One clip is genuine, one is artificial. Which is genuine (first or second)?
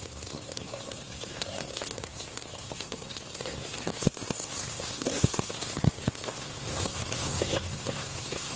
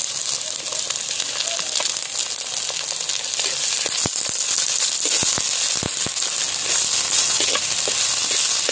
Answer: second